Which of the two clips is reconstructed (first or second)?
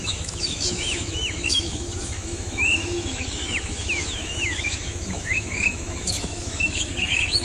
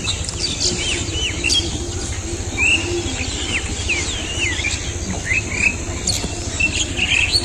first